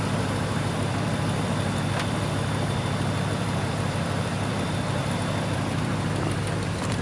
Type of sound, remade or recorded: remade